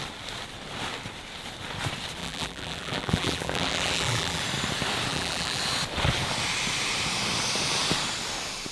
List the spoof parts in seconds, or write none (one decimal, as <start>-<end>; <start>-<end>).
2.2-4.4; 5.1-5.6